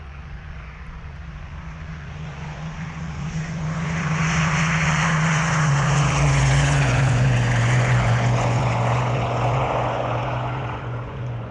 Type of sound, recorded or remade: remade